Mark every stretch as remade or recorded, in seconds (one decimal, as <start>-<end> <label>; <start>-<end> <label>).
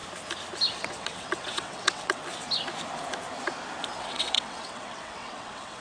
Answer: 0.0-0.7 recorded; 0.7-2.2 remade; 2.2-4.0 recorded; 4.0-5.8 remade